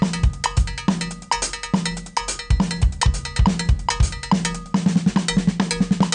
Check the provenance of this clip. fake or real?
real